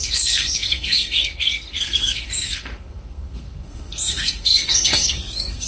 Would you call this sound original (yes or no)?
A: no